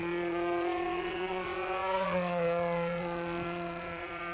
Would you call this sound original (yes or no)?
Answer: no